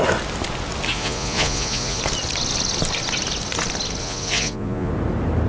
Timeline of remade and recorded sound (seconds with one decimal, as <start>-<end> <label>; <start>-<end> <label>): 0.0-0.9 recorded; 0.9-2.0 remade; 2.0-4.0 recorded; 4.0-4.9 remade; 4.9-5.5 recorded